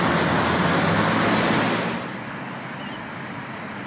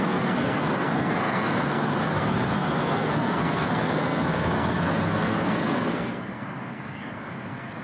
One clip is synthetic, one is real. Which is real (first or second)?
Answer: first